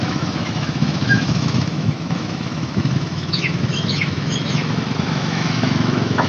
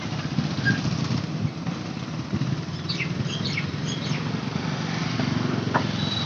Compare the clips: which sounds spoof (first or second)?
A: first